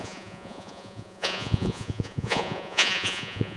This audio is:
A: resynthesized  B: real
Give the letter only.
A